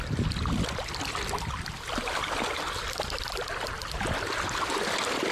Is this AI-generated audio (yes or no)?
no